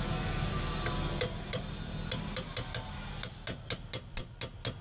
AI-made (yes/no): no